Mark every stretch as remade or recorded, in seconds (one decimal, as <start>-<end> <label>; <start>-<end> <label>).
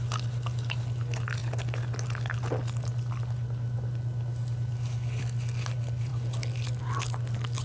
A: 0.0-7.6 recorded